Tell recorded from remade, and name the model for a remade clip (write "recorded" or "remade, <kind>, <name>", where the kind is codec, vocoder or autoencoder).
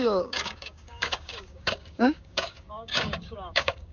remade, codec, DAC